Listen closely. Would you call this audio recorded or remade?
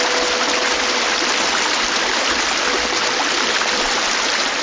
recorded